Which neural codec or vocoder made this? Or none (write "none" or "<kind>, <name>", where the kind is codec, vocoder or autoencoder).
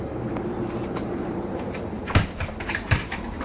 vocoder, BigVGAN v2